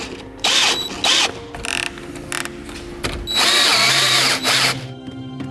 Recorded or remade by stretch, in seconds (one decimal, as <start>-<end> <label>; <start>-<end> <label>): 0.0-0.6 remade; 0.6-3.9 recorded; 3.9-5.5 remade

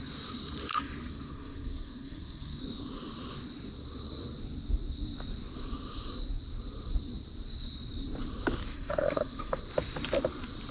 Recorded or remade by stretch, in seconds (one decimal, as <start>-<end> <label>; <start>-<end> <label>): 0.0-0.7 recorded; 0.7-2.6 remade; 2.6-8.7 recorded; 8.7-9.6 remade; 9.6-10.7 recorded